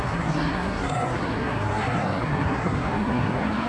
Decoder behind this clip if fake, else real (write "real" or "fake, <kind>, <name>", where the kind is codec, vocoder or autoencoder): fake, codec, SNAC